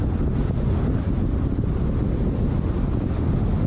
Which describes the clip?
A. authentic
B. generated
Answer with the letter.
A